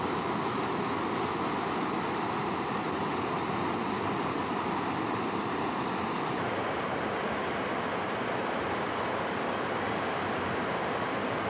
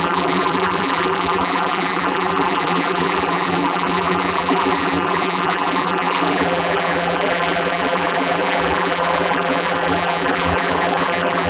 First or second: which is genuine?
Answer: first